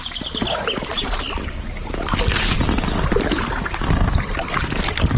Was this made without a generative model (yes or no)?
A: yes